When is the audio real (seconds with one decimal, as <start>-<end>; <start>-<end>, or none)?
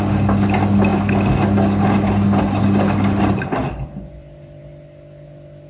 0.0-3.6; 4.6-5.7